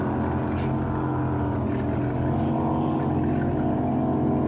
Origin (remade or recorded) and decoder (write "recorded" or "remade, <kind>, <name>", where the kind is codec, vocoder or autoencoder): recorded